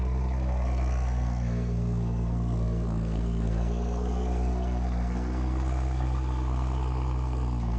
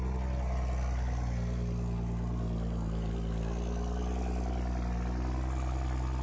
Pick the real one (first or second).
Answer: second